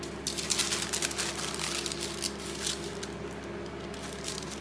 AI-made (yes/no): no